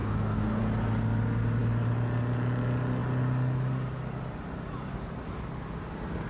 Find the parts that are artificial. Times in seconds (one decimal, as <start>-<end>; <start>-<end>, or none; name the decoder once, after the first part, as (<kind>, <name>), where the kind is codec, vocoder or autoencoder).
0.0-0.6 (codec, DAC)